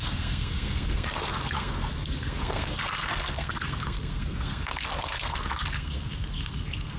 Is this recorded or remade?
remade